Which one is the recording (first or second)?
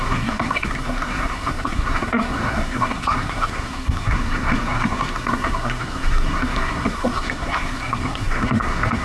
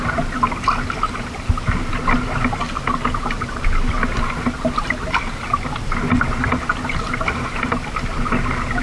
second